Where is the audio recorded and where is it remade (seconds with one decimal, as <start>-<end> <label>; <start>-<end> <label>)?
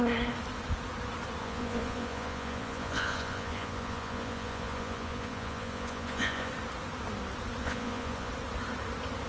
0.0-1.4 recorded; 1.4-6.5 remade; 6.5-7.6 recorded; 7.6-8.3 remade; 8.3-9.3 recorded